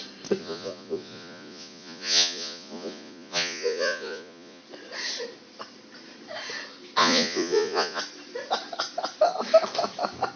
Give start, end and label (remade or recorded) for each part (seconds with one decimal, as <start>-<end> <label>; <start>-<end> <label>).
0.0-0.4 recorded; 0.4-4.6 remade; 4.6-7.0 recorded; 7.0-8.0 remade; 8.0-10.4 recorded